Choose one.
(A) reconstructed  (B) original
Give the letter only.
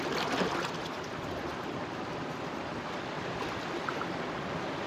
B